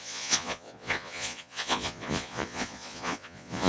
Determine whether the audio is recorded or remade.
remade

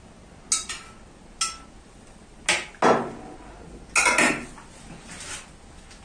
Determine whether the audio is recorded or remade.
recorded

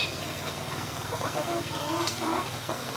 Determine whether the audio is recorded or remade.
remade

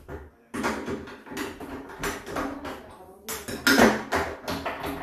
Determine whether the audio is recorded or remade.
recorded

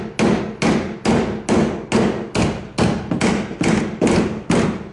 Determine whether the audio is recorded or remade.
recorded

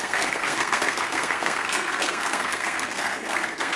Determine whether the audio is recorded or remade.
remade